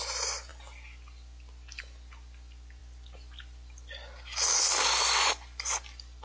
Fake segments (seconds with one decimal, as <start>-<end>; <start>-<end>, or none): none